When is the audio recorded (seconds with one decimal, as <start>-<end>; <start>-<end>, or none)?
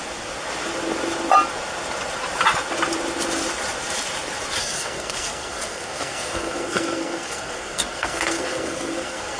0.0-4.6